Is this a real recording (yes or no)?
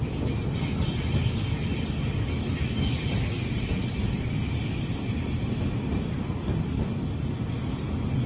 yes